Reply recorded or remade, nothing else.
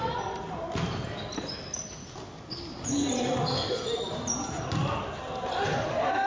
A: recorded